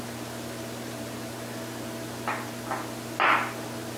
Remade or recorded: recorded